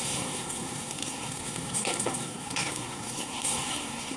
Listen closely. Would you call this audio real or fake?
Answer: fake